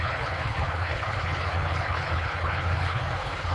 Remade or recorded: remade